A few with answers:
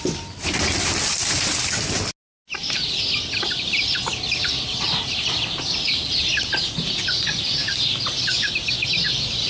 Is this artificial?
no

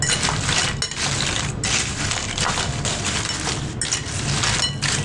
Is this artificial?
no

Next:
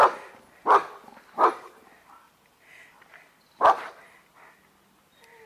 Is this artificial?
no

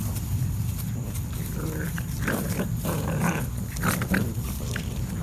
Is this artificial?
yes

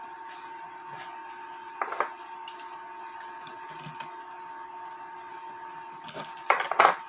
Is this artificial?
no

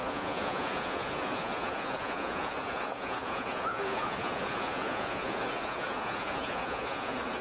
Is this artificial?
yes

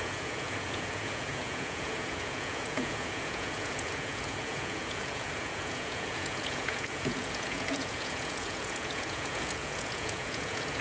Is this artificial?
yes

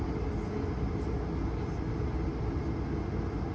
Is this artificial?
no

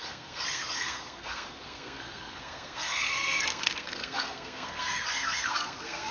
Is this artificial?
yes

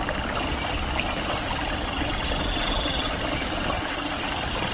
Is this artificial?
no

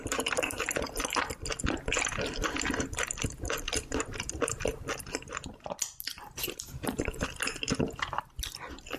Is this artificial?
no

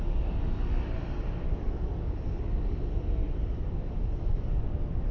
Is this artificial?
no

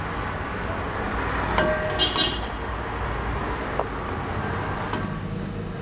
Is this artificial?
no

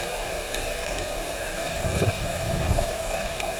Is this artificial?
yes